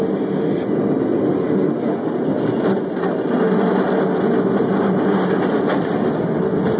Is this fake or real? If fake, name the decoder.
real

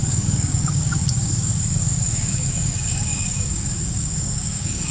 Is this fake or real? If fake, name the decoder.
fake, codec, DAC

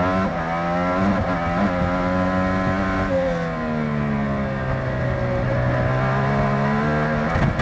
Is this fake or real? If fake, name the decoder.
real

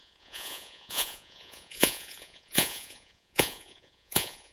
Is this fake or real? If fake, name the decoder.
fake, vocoder, Vocos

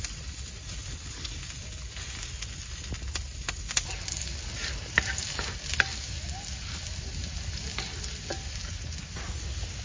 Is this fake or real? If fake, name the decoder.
real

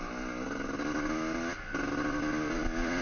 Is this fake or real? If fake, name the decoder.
real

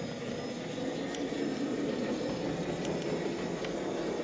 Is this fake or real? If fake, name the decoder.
real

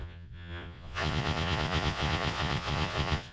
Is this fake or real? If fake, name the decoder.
fake, vocoder, Vocos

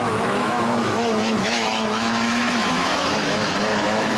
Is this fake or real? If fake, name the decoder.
fake, autoencoder, DAC-VAE